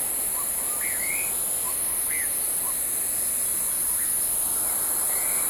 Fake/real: real